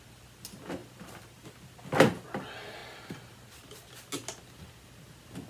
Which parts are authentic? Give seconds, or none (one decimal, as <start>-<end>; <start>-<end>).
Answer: 0.0-0.8; 2.4-2.8; 3.5-5.5